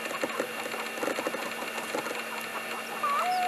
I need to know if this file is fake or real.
real